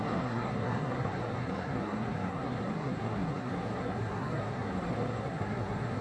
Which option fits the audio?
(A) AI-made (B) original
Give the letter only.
A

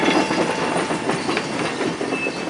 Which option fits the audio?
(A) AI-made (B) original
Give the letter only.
B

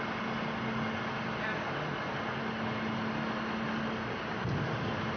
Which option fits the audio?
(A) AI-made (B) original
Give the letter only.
B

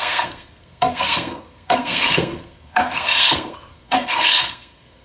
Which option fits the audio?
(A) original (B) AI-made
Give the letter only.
B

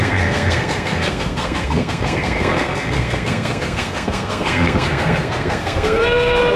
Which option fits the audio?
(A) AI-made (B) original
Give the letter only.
A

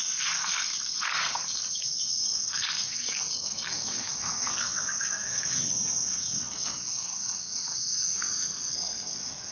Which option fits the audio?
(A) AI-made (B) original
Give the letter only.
A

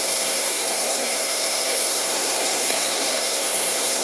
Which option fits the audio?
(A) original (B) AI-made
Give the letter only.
B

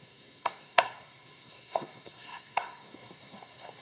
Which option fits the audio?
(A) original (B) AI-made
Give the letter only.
B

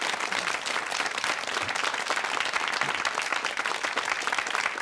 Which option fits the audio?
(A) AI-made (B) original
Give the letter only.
B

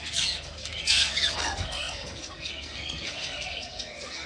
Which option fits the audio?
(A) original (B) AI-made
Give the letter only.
B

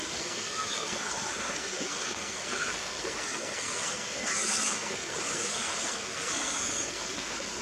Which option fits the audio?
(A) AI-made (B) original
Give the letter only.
A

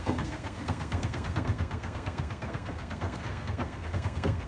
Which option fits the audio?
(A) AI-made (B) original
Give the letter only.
A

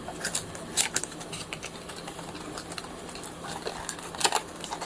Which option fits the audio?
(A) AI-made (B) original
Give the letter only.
B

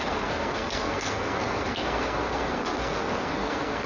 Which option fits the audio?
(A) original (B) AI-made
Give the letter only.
B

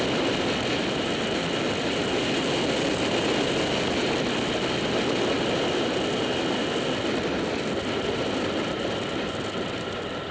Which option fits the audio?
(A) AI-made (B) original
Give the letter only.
B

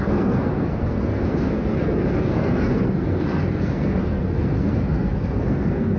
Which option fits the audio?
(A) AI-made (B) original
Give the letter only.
A